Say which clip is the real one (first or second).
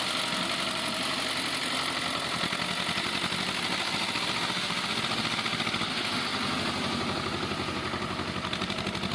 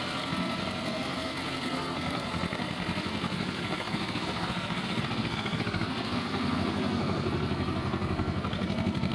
first